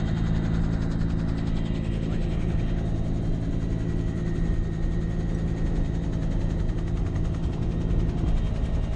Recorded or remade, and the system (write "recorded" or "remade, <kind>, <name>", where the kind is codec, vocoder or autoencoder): recorded